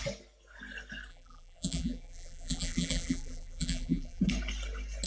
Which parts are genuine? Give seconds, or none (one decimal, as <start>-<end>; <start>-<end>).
0.0-1.1; 4.2-5.1